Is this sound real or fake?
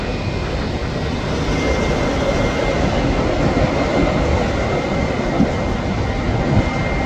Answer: real